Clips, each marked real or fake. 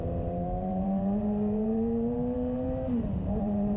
fake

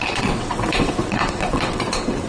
fake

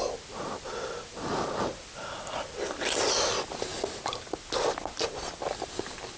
real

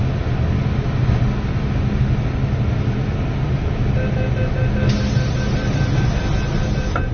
real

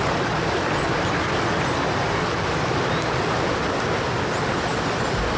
real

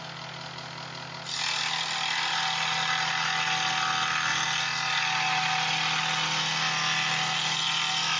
real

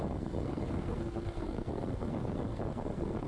fake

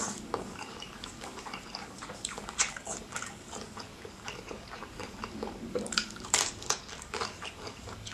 fake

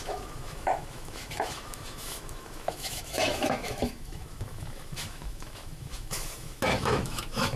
fake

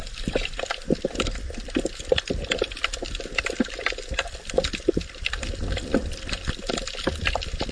real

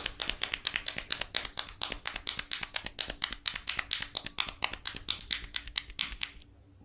real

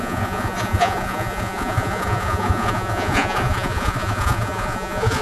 fake